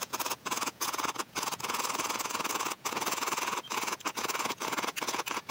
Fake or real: fake